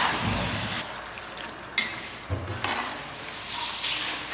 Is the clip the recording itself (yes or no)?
yes